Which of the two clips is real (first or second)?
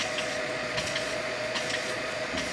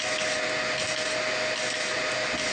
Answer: second